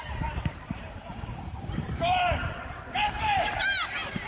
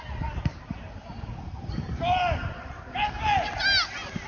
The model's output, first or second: first